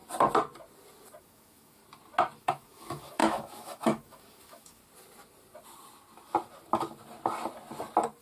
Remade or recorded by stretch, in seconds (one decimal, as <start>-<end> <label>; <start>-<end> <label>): 0.0-1.2 recorded; 1.2-1.8 remade; 1.8-2.4 recorded; 2.4-4.8 remade; 4.8-8.2 recorded